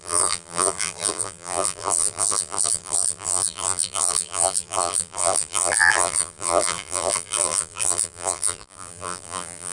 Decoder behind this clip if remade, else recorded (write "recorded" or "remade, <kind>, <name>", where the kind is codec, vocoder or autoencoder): remade, vocoder, BigVGAN v2